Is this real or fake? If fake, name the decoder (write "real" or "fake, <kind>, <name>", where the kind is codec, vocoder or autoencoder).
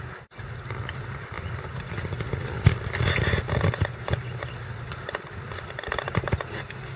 real